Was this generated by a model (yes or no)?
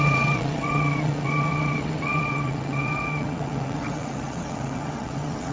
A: yes